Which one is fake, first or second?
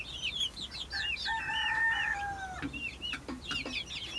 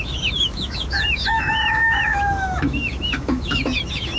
second